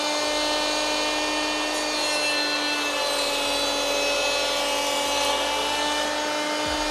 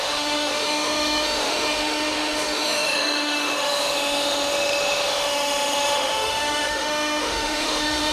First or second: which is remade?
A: second